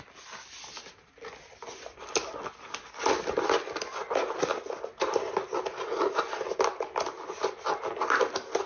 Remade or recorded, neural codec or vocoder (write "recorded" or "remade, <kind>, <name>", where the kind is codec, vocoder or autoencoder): recorded